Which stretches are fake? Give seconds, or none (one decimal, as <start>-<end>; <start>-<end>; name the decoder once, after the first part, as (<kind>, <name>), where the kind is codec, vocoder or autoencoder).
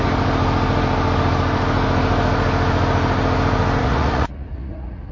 3.8-5.1 (vocoder, Vocos)